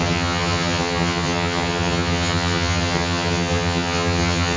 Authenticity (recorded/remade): remade